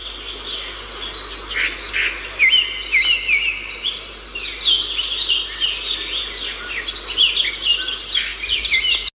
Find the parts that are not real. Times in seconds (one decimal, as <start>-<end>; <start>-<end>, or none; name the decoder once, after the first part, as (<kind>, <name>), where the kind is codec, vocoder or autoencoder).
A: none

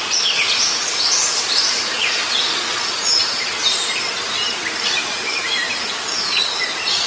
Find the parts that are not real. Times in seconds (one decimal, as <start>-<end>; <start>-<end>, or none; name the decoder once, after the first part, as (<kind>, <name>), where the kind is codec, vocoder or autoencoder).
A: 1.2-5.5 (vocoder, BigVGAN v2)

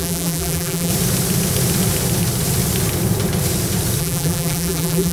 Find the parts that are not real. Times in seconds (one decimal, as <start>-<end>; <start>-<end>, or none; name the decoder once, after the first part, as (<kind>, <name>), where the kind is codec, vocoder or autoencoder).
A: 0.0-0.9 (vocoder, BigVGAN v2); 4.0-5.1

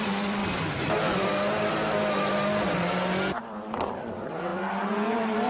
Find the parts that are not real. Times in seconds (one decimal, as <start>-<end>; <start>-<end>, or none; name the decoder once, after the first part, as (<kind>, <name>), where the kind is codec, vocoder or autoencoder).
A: 0.0-0.4 (vocoder, BigVGAN v2); 3.4-5.5

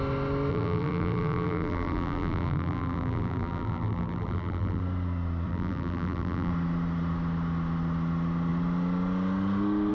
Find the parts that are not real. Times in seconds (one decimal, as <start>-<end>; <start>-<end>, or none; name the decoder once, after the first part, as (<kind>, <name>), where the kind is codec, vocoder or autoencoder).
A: 0.5-4.8 (vocoder, BigVGAN v2); 5.5-6.5

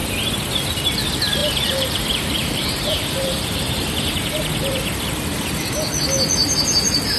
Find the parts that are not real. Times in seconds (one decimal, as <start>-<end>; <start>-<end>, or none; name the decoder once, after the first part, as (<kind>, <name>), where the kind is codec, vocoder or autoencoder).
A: 1.4-5.6 (vocoder, BigVGAN v2); 6.4-7.2